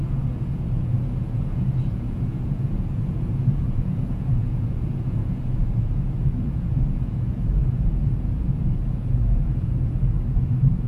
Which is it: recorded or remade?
remade